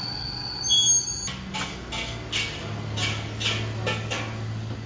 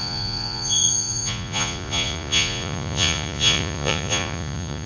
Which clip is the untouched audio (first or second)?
first